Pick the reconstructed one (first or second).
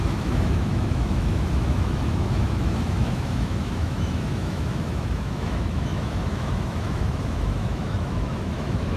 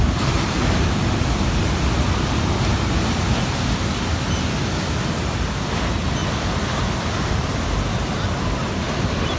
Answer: first